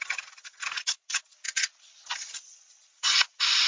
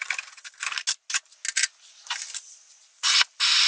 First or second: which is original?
second